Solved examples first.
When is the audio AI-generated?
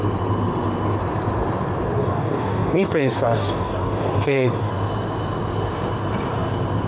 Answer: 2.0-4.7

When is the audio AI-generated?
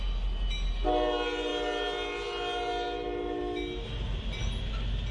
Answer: none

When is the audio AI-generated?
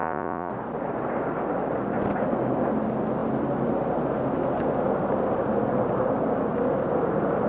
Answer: 0.0-0.5